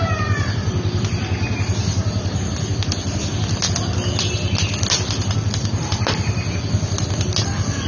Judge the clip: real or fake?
real